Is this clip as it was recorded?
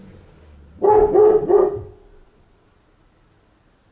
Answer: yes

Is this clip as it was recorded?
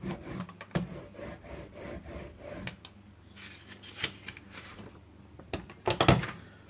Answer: yes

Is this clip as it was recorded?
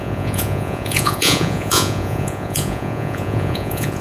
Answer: no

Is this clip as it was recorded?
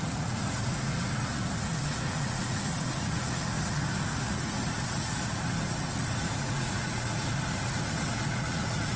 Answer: no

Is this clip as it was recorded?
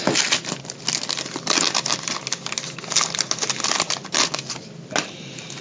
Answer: yes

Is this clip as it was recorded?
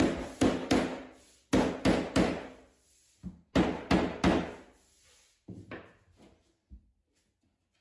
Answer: yes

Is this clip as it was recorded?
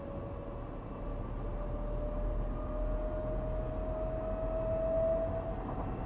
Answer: yes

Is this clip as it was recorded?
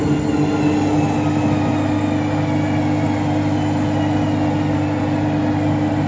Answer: yes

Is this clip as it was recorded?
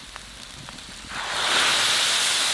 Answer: yes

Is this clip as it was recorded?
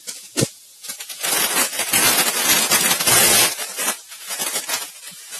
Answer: no